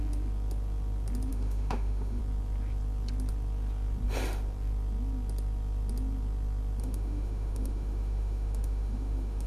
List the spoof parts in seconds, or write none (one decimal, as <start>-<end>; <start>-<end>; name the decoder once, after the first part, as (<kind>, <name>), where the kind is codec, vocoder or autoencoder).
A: 1.3-2.2 (autoencoder, DAC-VAE); 6.8-9.5

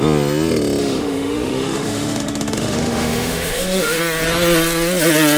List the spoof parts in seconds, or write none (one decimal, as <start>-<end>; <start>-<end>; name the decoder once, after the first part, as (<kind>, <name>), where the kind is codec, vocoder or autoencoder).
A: 0.8-4.0 (autoencoder, DAC-VAE)